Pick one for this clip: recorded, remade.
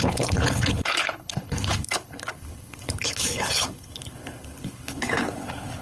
remade